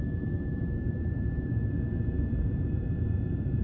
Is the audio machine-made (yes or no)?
yes